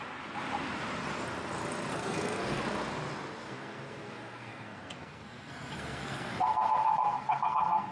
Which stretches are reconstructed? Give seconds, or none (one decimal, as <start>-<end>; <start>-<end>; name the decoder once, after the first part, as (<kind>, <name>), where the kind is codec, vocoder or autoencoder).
1.9-2.6 (codec, SNAC); 3.4-7.9